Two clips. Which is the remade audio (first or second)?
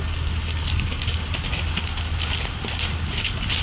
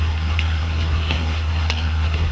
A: second